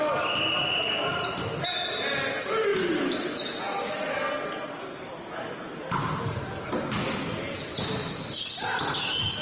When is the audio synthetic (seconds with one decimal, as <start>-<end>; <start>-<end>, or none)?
none